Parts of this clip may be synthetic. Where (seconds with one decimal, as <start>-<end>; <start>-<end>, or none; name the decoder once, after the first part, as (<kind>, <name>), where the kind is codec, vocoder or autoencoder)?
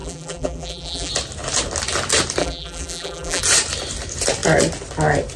0.0-1.1 (vocoder, BigVGAN v2); 2.4-3.4